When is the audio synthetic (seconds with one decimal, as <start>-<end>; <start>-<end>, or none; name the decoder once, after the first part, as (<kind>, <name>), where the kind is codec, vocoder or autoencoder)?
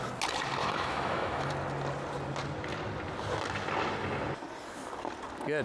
0.6-1.5 (autoencoder, DAC-VAE)